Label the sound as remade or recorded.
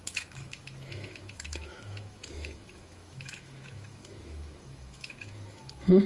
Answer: remade